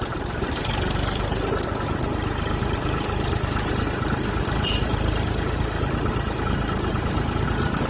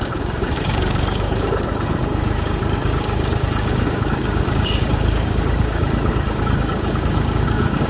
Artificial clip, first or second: second